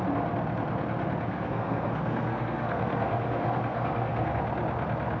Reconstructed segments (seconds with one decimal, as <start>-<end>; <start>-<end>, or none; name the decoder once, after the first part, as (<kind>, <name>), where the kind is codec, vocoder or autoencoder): 1.3-4.4 (codec, SNAC)